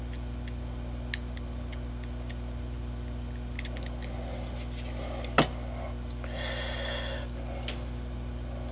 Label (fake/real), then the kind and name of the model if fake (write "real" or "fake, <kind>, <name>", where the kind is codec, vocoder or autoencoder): real